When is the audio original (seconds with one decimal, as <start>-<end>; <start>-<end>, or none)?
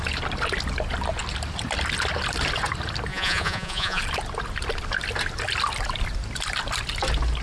0.0-3.1; 4.0-7.4